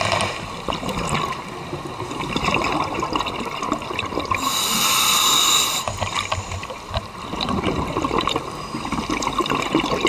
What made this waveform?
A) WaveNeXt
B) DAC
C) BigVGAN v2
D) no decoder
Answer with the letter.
D